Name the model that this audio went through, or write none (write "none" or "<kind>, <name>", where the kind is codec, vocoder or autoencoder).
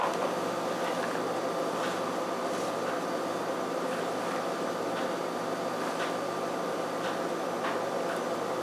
none